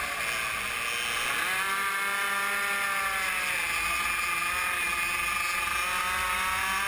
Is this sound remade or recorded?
recorded